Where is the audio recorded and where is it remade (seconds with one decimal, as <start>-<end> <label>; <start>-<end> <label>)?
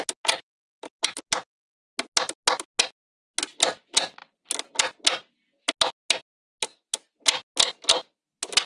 0.0-8.7 recorded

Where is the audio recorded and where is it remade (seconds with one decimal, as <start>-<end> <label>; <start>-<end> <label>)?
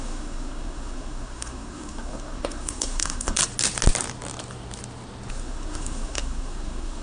0.0-3.4 remade; 3.4-5.3 recorded; 5.3-7.0 remade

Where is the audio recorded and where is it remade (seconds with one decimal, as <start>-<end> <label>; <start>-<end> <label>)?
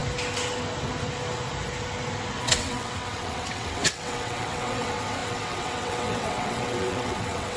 0.0-2.4 recorded; 2.4-7.6 remade